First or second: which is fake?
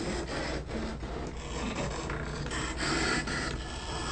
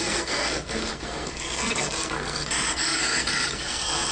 second